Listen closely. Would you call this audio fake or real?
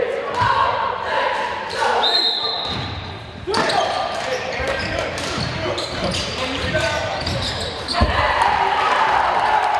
fake